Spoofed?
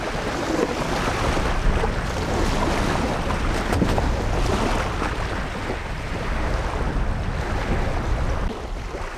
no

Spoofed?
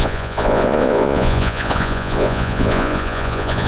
yes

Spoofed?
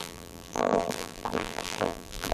yes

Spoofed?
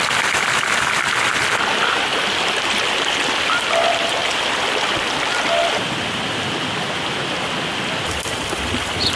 no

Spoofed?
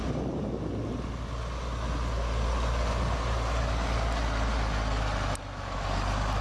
no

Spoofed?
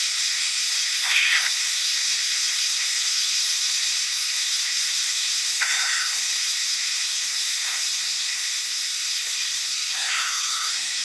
yes